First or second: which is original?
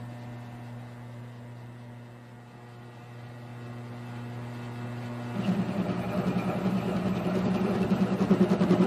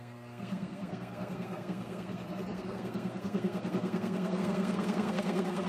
first